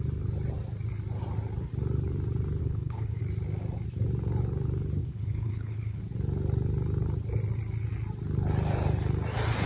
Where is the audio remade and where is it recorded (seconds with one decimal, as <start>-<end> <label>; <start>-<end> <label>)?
0.0-2.6 recorded; 2.6-3.2 remade; 3.2-5.0 recorded; 5.0-6.0 remade; 6.0-9.7 recorded